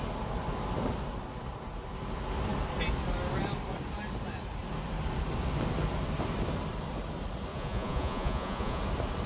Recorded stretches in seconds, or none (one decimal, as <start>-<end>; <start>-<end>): 0.0-7.5; 8.8-9.3